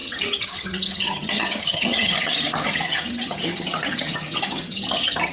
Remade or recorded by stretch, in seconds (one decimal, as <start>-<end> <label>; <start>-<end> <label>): 0.0-5.3 remade